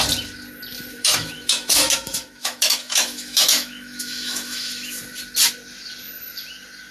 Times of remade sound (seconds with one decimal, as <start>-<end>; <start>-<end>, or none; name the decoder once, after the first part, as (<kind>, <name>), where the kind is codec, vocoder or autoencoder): 0.9-5.0 (autoencoder, DAC-VAE)